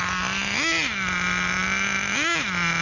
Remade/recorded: recorded